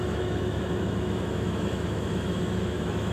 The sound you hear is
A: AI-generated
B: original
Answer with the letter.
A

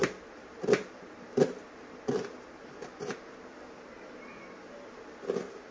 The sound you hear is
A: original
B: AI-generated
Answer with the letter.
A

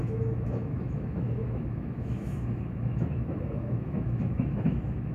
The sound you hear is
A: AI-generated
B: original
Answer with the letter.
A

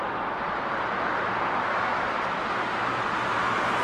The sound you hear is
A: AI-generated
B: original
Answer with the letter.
B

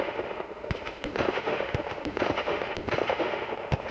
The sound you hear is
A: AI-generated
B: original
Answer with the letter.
A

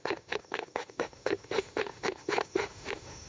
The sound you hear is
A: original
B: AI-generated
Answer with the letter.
B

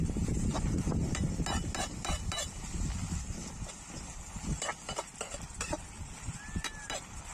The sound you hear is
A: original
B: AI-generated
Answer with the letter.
A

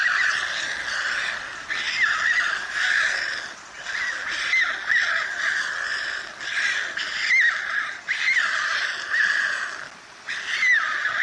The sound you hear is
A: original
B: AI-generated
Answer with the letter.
A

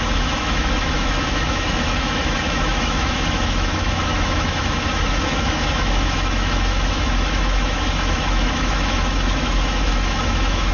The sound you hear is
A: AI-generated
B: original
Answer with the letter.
A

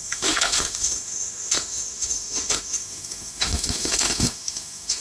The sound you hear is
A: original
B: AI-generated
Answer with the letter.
B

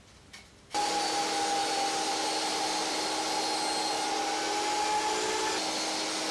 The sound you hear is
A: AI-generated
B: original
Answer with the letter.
B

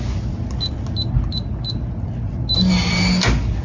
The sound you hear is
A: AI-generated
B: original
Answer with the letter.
B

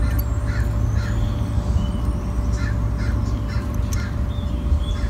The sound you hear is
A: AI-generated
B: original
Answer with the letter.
B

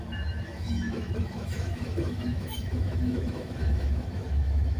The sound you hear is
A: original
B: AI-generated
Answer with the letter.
B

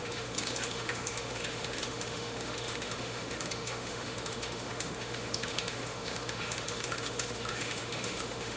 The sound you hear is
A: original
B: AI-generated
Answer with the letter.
B